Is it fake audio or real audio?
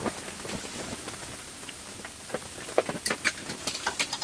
real